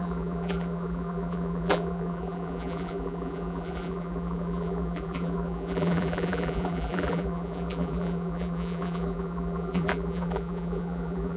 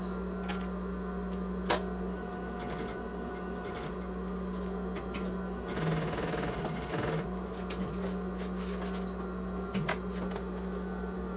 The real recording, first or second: second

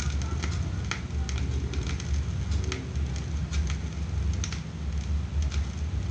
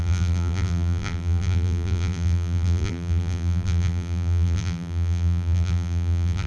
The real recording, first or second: first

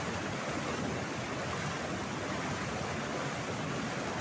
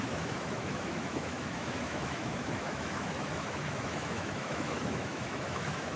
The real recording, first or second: first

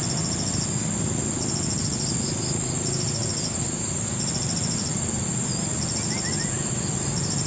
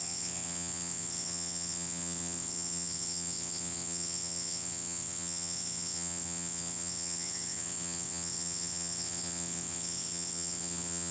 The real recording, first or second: first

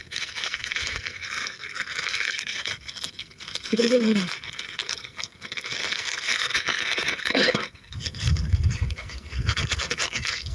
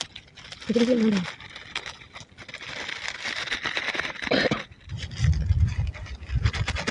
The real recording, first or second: second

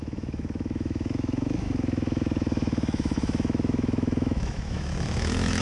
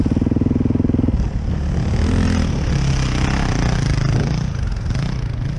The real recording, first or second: second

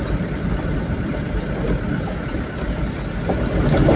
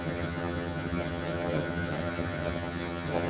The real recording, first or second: first